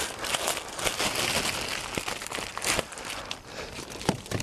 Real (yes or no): yes